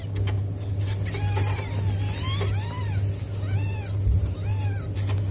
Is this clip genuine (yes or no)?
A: yes